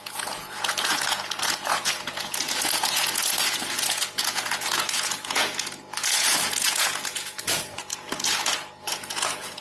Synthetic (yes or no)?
yes